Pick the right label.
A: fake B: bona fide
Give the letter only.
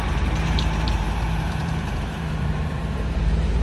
A